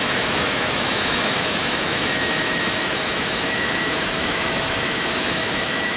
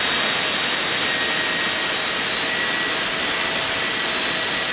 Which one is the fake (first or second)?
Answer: first